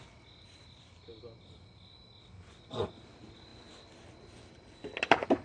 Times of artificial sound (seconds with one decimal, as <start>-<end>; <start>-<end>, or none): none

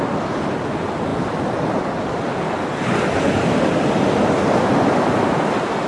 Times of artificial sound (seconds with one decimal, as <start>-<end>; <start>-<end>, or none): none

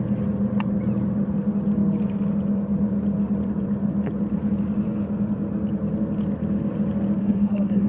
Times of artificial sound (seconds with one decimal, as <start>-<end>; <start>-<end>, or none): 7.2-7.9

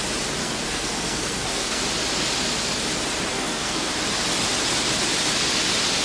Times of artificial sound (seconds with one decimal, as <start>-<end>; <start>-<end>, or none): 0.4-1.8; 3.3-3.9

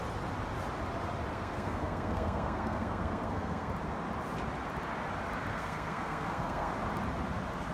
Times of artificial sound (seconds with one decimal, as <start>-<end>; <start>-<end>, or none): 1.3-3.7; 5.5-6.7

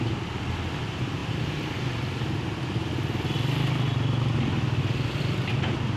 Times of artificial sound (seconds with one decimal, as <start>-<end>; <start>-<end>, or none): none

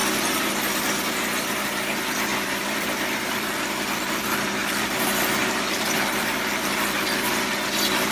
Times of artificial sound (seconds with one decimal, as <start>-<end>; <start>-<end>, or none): 1.5-8.1